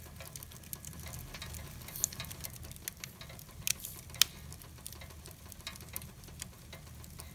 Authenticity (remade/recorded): recorded